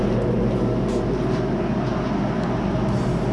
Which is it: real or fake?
real